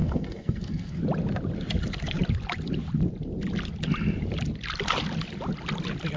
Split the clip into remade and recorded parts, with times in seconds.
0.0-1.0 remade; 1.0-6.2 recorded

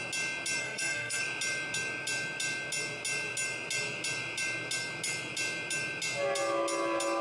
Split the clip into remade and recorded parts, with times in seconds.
0.0-0.6 recorded; 0.6-1.2 remade; 1.2-7.2 recorded

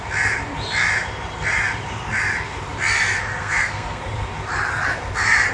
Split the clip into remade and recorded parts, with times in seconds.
0.0-3.4 recorded; 3.4-4.0 remade; 4.0-5.5 recorded

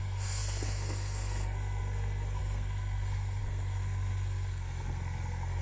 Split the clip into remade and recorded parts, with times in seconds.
0.0-5.6 remade

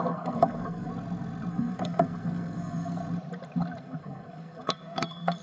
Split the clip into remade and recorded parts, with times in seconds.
0.0-0.9 remade; 0.9-1.5 recorded; 1.5-3.0 remade; 3.0-3.8 recorded; 3.8-5.4 remade

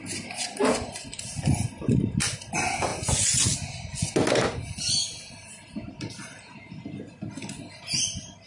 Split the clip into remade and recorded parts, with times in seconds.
0.0-8.5 recorded

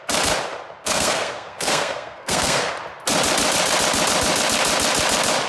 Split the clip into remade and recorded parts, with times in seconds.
0.0-0.8 recorded; 0.8-2.7 remade; 2.7-5.5 recorded

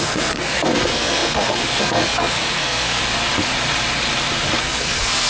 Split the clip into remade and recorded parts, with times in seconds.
0.0-3.0 remade; 3.0-4.6 recorded; 4.6-5.3 remade